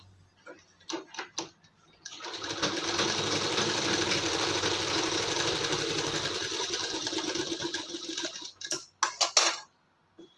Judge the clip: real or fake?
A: real